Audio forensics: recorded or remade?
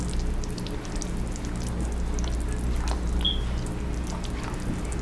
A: recorded